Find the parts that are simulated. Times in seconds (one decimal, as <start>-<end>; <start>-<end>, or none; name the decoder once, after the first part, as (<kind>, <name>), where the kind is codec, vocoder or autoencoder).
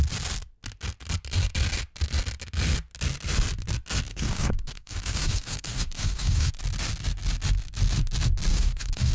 4.1-6.5 (codec, DAC); 8.5-9.1